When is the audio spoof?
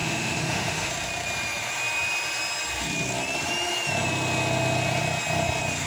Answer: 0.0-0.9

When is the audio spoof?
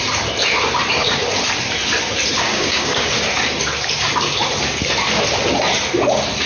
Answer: 2.5-3.1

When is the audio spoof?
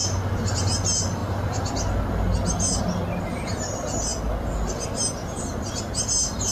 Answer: none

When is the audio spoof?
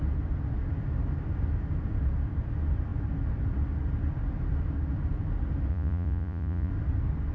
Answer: 5.7-6.7